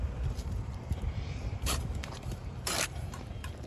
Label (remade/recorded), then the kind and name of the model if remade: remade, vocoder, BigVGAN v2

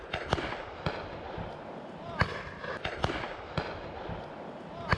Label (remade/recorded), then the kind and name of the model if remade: recorded